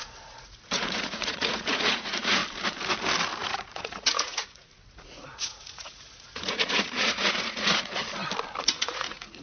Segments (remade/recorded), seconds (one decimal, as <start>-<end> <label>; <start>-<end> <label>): 0.0-2.4 remade; 2.4-3.4 recorded; 3.4-8.0 remade; 8.0-8.6 recorded; 8.6-9.4 remade